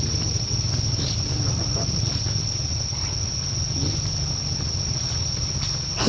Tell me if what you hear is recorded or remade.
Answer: recorded